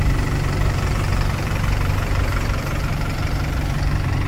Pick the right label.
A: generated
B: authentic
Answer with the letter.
A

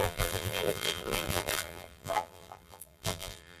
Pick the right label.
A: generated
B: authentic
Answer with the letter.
A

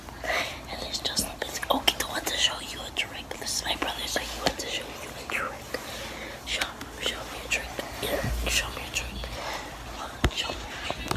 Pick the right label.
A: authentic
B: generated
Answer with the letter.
A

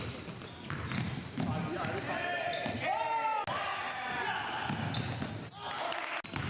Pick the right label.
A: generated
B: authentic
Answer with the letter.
B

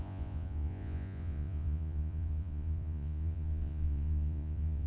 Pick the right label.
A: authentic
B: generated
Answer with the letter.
B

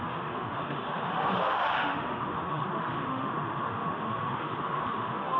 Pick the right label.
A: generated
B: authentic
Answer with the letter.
A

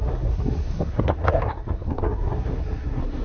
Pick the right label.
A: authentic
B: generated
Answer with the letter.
B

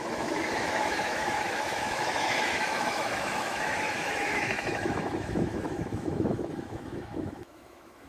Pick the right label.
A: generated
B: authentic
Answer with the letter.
A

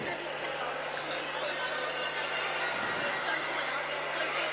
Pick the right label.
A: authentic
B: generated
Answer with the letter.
A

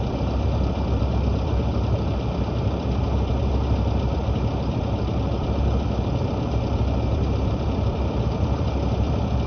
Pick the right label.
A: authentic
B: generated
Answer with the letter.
B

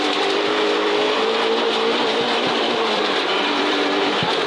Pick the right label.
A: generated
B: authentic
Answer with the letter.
A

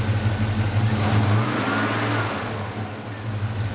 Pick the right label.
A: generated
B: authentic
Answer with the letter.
B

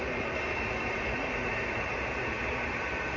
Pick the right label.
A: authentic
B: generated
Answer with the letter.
B